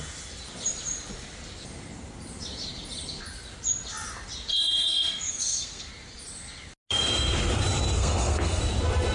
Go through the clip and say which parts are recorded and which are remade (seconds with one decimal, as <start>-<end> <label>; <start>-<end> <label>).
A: 0.0-4.5 recorded; 4.5-5.9 remade; 5.9-8.0 recorded; 8.0-8.6 remade; 8.6-9.1 recorded